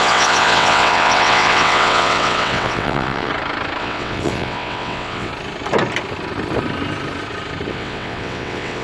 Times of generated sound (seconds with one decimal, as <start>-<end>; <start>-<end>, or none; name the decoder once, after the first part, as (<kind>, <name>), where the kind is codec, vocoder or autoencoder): 0.0-3.3 (vocoder, WaveNeXt); 3.8-5.3; 7.7-8.8